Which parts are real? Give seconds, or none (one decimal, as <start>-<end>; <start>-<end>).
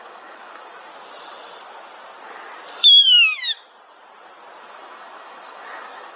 0.9-4.6